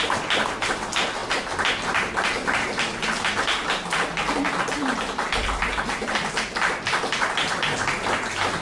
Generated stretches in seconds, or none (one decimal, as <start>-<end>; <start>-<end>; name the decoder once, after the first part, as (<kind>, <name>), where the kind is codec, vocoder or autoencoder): none